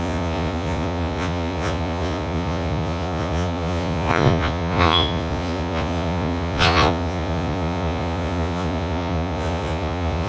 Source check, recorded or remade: remade